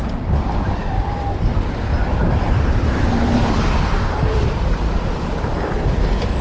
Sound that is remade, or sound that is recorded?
remade